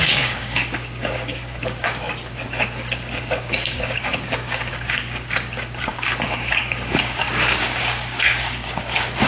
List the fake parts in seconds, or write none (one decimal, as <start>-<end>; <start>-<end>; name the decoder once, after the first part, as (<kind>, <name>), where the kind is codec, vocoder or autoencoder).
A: 0.0-9.3 (codec, DAC)